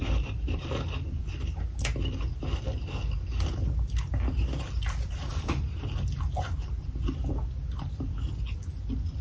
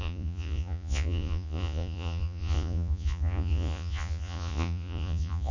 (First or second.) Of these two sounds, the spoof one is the second